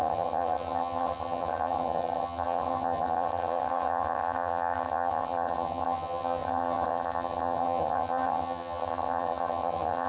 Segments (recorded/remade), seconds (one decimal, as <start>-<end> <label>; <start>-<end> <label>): 0.0-10.1 remade